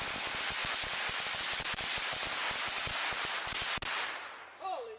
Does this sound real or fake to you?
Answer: real